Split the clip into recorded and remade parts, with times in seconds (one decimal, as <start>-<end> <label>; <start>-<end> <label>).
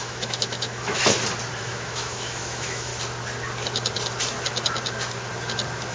0.0-1.0 remade; 1.0-1.6 recorded; 1.6-2.9 remade; 2.9-5.9 recorded